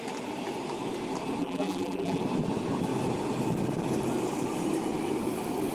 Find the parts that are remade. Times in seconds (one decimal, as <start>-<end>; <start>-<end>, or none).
1.4-2.2